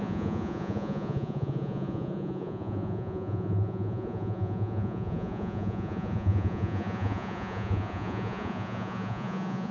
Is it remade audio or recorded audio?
remade